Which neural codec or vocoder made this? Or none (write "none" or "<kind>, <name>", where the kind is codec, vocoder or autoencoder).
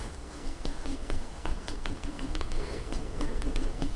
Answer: codec, SNAC